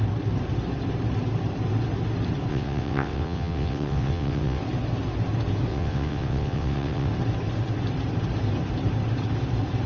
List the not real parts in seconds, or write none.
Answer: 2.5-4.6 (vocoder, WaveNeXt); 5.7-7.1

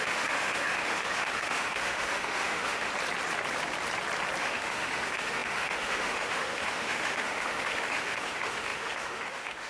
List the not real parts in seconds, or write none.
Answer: 0.0-2.9 (autoencoder, DAC-VAE); 4.4-9.7

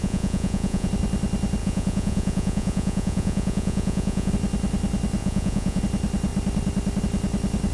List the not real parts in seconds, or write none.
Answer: 0.0-0.9 (vocoder, Vocos); 1.6-4.3; 5.2-5.8

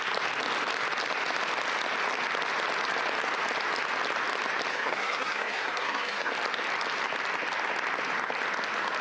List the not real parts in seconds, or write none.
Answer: 4.7-6.3 (codec, SNAC)

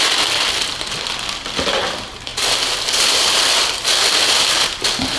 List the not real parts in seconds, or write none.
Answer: none

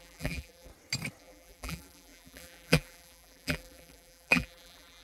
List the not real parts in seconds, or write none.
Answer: 0.0-0.7 (vocoder, BigVGAN v2); 1.2-5.0

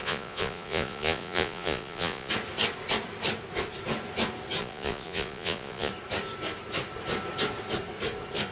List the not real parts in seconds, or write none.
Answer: 0.0-2.3 (vocoder, Vocos); 4.6-5.9